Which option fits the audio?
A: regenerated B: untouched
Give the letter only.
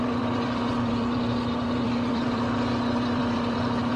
A